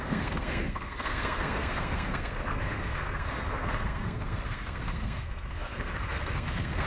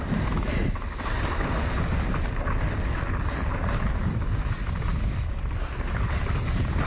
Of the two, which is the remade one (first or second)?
first